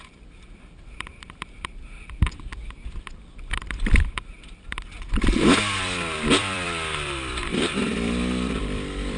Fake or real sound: fake